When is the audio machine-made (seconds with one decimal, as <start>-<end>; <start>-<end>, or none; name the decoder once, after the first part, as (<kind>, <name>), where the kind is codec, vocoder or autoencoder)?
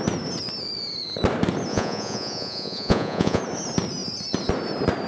1.7-3.4 (vocoder, Vocos)